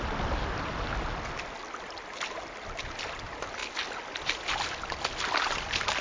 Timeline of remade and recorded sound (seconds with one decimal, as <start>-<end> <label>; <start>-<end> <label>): 0.0-6.0 recorded